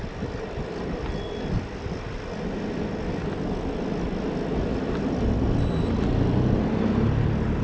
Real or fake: real